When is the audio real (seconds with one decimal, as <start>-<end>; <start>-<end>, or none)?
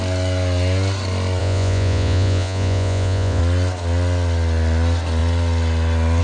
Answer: 0.0-1.4; 3.4-6.2